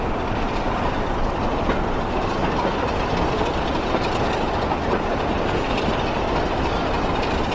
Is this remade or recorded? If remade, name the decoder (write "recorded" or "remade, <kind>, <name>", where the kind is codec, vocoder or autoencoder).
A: recorded